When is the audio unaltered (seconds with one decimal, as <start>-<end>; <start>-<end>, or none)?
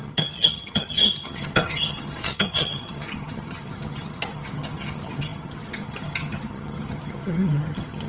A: none